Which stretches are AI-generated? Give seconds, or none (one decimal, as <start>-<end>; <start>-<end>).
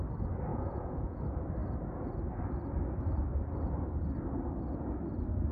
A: 0.5-1.2